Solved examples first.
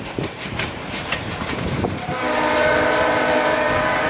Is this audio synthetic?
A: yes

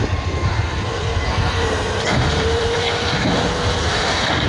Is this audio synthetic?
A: yes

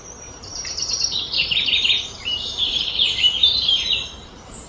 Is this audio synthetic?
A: yes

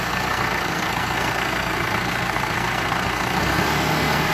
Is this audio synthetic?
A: yes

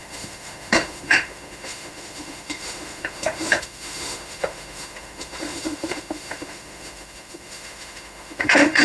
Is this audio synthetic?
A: yes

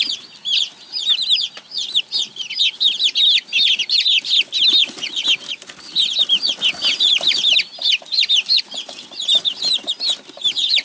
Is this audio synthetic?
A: no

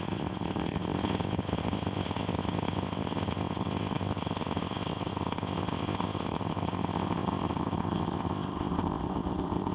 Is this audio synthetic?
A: yes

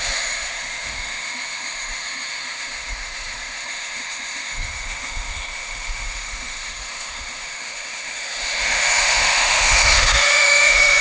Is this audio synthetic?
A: yes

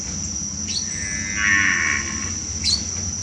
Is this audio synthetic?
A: no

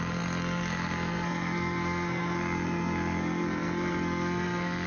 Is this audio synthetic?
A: yes